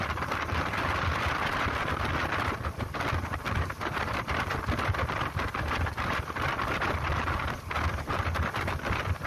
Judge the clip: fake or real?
real